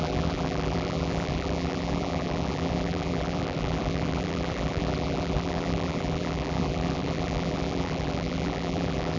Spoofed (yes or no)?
yes